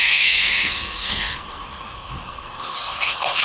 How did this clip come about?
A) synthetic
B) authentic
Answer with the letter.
A